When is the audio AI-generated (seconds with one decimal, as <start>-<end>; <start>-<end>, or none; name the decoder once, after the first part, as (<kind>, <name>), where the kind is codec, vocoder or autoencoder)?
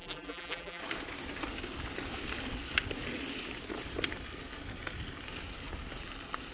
0.0-0.8 (vocoder, BigVGAN v2)